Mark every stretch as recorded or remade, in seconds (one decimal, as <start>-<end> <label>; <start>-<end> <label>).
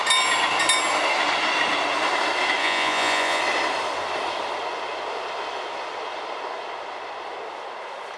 0.0-2.6 recorded; 2.6-3.4 remade; 3.4-8.2 recorded